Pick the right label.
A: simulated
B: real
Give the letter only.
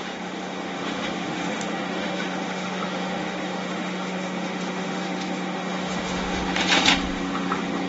A